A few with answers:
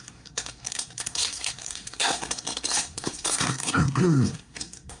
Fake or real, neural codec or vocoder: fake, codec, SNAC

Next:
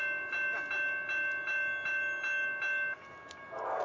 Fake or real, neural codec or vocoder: real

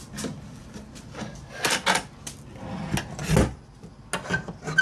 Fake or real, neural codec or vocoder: real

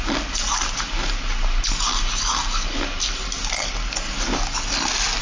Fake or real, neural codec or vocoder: real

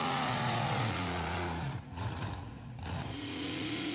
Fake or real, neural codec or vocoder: fake, vocoder, Vocos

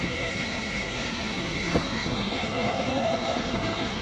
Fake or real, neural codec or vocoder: fake, codec, SNAC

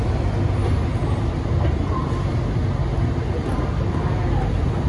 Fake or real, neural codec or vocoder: real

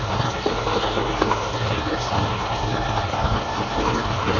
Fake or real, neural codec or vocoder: fake, codec, SNAC